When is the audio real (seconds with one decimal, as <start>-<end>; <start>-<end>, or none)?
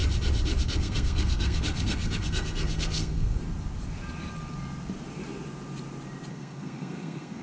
0.0-0.6; 3.4-6.3